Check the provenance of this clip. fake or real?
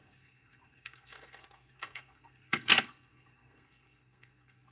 fake